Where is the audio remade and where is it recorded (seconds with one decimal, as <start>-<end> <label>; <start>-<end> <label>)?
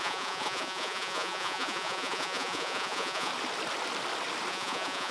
0.0-3.3 remade; 3.3-4.5 recorded; 4.5-5.1 remade